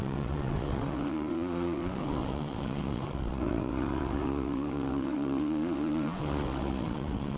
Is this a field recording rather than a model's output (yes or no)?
no